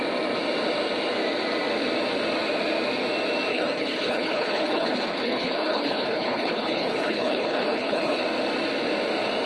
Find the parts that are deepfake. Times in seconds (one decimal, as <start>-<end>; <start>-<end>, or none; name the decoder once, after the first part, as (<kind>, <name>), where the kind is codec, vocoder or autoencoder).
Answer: 3.5-8.2 (codec, HILCodec)